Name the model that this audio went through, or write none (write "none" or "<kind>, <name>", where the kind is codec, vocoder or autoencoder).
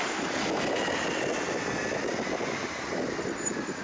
none